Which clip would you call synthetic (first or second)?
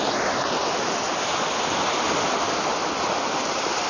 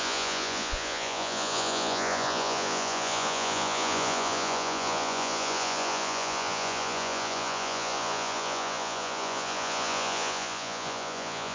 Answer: second